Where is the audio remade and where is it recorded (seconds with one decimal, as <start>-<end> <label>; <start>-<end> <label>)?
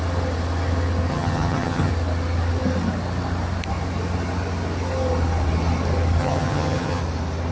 0.0-1.1 recorded; 1.1-1.9 remade; 1.9-6.2 recorded; 6.2-7.0 remade; 7.0-7.5 recorded